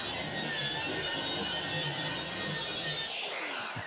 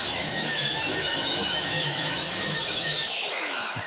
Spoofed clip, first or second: second